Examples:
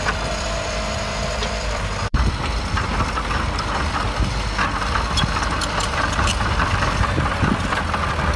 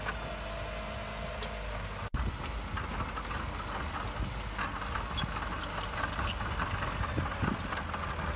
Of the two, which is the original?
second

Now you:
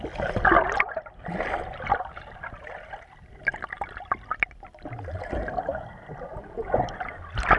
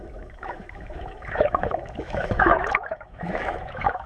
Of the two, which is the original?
first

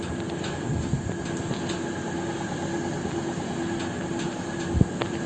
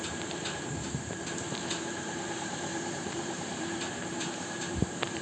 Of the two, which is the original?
first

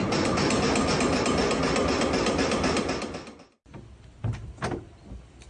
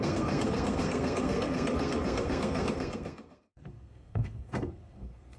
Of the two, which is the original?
first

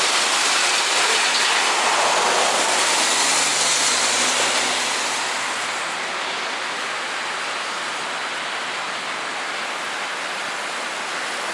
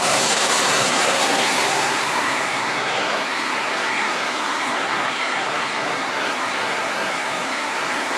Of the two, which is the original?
first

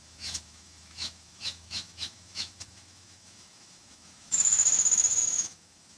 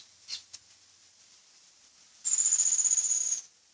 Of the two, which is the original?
second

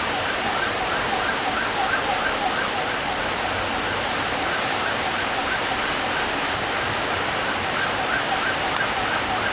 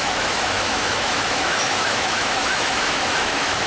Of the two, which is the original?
first